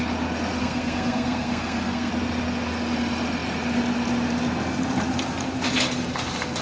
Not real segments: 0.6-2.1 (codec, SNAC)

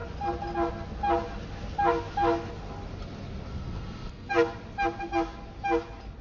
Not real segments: 3.5-4.3 (codec, SNAC)

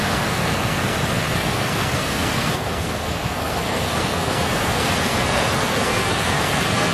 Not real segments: 0.0-6.9 (codec, SNAC)

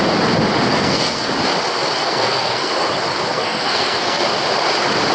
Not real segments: 0.7-1.3 (codec, SNAC); 2.0-2.7; 3.3-4.2

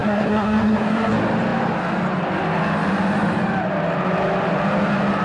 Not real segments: 0.0-1.1 (codec, SNAC)